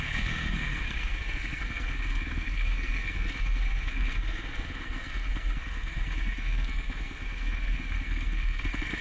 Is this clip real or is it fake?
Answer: fake